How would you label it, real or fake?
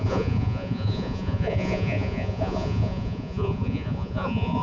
fake